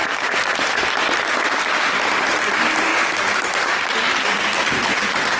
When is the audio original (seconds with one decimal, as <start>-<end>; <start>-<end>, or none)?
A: 2.9-3.7